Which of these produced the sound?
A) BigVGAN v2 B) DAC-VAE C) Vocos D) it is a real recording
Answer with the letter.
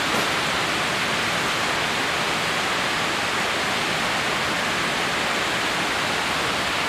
D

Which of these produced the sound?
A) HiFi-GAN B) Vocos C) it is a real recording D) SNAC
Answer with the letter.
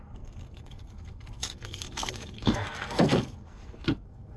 D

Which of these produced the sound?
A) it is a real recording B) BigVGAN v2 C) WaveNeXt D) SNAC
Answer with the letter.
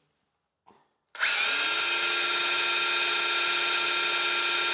A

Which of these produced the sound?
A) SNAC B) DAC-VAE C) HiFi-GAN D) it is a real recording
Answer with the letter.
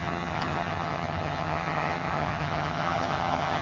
C